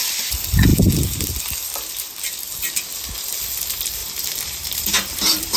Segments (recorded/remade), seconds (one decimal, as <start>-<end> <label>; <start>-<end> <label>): 0.0-4.0 recorded; 4.0-5.6 remade